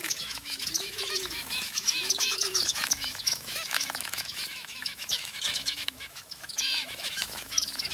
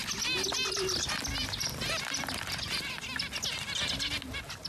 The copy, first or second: first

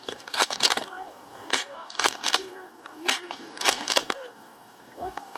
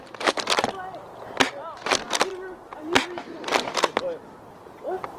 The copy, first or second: first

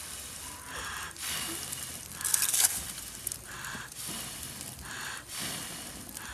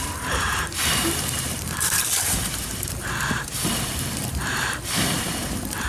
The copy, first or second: second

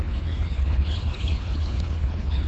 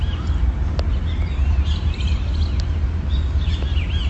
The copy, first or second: first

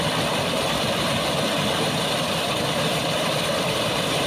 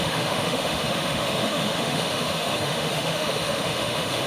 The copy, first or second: second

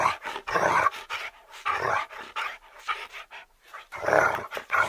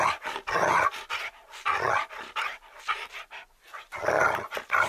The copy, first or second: first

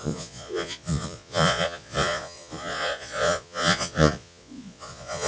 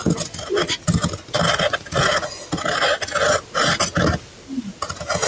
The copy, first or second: first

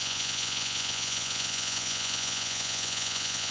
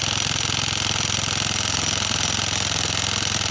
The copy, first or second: first